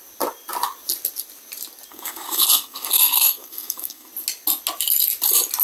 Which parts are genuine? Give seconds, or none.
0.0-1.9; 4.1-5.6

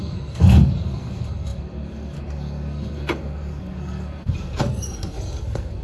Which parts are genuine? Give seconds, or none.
none

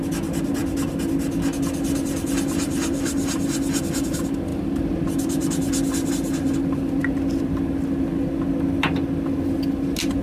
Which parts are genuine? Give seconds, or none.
0.0-10.2

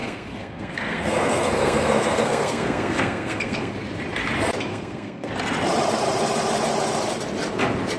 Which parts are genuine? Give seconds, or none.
3.7-4.7; 5.3-8.0

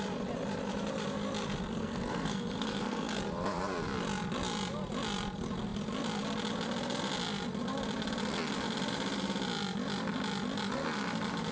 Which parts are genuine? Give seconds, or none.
0.0-1.8; 3.2-11.5

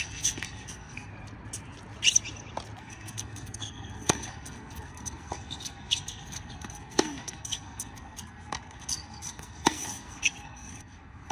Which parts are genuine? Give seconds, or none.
1.1-2.8